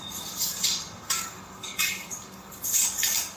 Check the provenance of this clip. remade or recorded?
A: remade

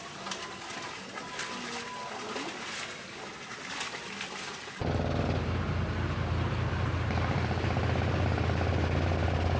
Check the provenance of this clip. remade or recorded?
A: recorded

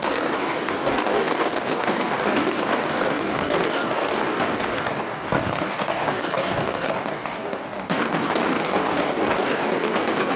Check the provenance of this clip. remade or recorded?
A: remade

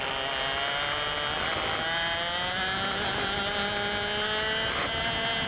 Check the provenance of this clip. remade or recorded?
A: recorded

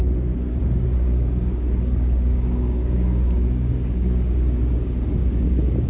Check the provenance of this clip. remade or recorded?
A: remade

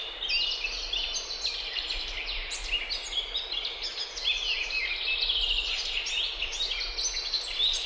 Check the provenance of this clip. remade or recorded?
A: recorded